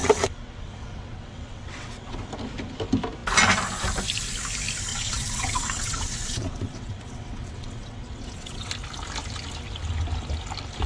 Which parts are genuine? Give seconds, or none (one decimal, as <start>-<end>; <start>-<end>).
2.2-4.9; 8.7-10.9